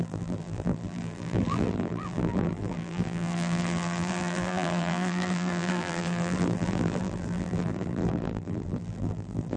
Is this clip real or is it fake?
fake